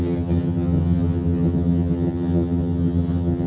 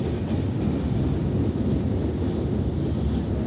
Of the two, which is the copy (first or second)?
first